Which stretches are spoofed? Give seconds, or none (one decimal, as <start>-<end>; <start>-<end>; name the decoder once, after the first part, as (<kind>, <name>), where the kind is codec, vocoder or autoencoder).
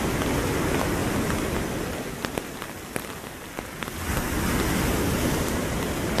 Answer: none